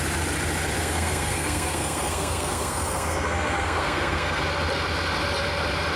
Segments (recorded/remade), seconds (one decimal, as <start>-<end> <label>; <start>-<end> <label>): 0.0-0.8 recorded; 0.8-4.4 remade; 4.4-6.0 recorded